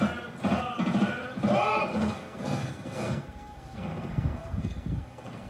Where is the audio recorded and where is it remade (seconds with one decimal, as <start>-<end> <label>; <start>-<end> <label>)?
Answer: 0.0-1.9 recorded; 1.9-5.5 remade